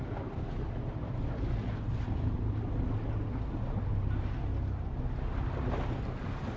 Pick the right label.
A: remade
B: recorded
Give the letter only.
B